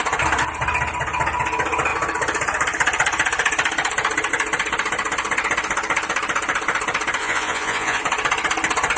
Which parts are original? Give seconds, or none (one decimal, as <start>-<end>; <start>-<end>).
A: 0.0-7.2; 8.0-9.0

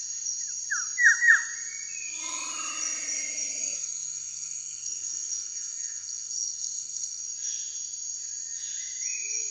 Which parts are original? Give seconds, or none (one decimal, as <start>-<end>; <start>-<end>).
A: 0.0-3.6; 7.2-9.5

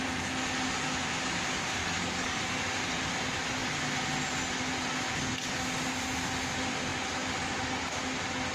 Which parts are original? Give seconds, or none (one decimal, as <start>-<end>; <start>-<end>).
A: 0.0-1.8; 2.4-8.5

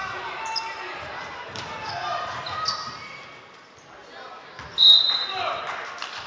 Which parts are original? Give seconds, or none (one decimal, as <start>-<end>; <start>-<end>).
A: 1.6-6.3

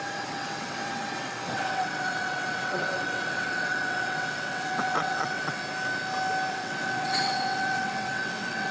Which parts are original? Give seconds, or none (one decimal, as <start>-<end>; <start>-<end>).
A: 5.6-6.5